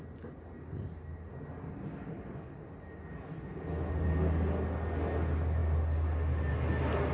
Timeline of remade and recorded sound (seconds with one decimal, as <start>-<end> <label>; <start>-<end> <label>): 0.0-7.1 recorded